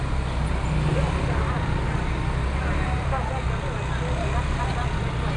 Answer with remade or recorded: recorded